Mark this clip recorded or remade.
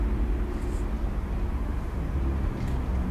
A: recorded